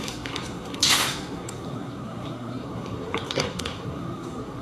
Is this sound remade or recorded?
remade